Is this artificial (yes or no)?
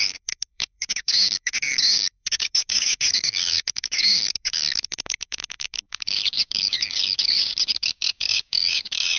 yes